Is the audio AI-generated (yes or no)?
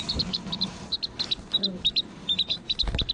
yes